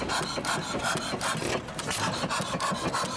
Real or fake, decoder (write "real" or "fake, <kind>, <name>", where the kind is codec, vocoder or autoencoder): real